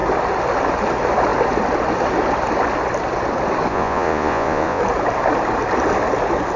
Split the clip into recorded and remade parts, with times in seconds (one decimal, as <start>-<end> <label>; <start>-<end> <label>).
0.0-3.7 recorded; 3.7-4.8 remade; 4.8-6.6 recorded